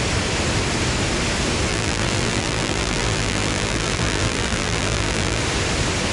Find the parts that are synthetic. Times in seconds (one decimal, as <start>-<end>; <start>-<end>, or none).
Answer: 1.7-5.4